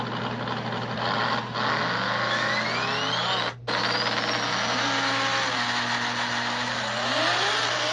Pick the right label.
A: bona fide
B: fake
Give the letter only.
A